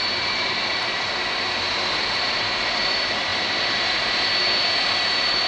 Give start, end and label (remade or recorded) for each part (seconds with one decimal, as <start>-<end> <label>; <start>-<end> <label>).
0.0-5.5 recorded